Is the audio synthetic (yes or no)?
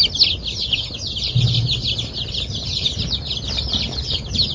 no